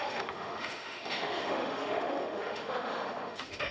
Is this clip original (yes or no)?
no